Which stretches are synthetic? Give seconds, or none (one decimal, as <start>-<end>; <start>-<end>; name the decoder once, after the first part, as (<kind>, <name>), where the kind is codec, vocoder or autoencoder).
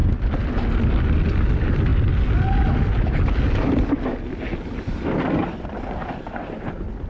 0.7-1.9 (vocoder, BigVGAN v2); 6.2-7.1